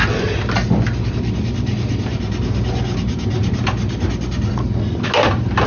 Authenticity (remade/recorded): recorded